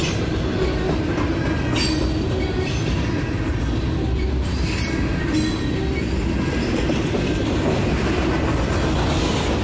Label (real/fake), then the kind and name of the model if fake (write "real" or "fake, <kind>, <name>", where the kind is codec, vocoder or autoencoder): real